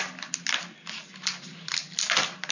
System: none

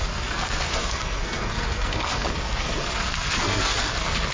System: codec, SNAC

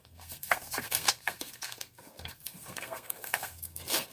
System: codec, SNAC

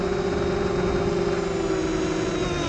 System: none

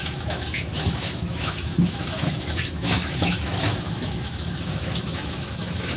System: autoencoder, DAC-VAE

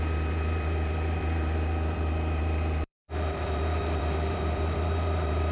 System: vocoder, BigVGAN v2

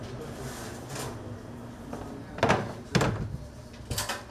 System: none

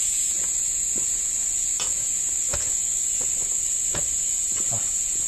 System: vocoder, Vocos